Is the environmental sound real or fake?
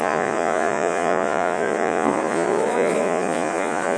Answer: fake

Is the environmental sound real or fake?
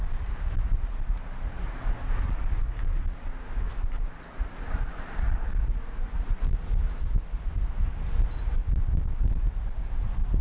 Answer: real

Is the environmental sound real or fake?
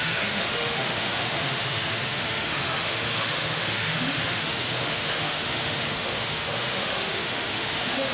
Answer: fake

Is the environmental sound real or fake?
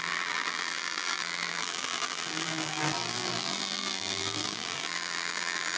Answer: fake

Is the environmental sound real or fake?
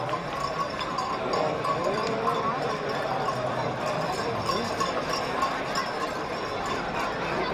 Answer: fake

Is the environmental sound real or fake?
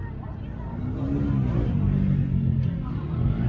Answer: real